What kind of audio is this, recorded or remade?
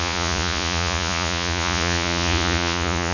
remade